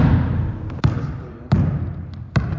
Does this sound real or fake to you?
real